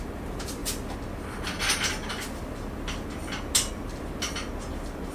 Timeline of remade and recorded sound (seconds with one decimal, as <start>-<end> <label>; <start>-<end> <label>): 0.0-5.1 recorded